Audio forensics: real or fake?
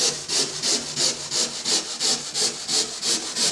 real